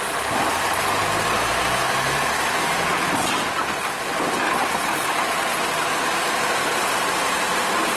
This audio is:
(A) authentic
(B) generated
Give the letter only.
A